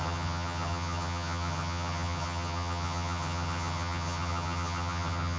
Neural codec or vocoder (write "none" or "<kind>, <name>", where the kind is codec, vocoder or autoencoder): vocoder, HiFi-GAN